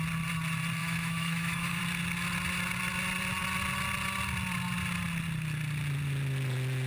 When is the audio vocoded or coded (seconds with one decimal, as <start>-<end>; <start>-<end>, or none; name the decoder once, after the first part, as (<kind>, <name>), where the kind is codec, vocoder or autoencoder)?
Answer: 0.8-1.8 (autoencoder, DAC-VAE)